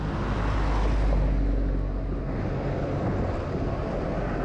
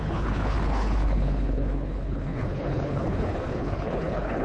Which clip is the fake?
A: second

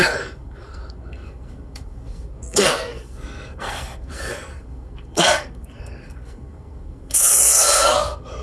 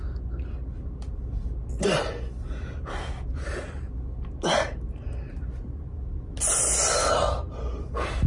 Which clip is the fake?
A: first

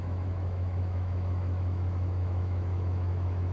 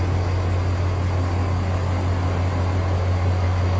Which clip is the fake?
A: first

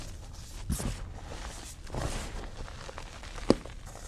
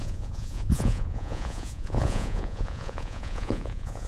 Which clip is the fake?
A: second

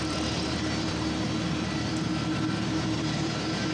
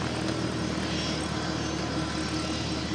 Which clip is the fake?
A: first